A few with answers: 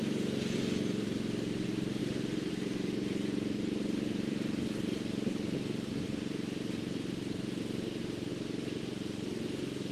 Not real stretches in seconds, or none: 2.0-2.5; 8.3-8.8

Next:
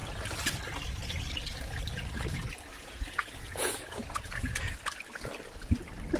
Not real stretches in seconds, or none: 2.7-4.7

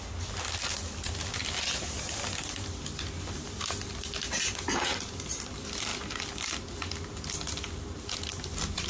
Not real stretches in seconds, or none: none